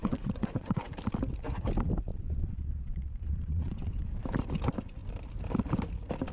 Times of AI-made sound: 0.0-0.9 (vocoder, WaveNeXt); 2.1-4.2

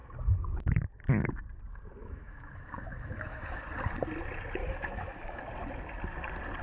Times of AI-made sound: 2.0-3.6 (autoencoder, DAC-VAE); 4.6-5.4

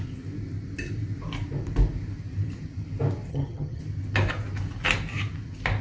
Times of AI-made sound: 3.3-3.8 (vocoder, HiFi-GAN)

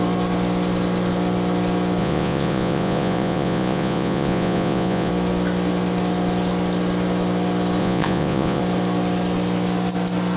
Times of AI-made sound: 2.0-5.1 (vocoder, Vocos); 7.8-8.6

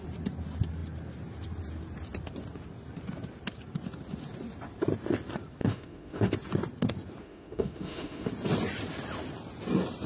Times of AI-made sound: 5.6-6.3 (autoencoder, DAC-VAE); 7.2-8.3